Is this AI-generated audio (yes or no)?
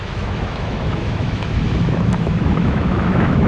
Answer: yes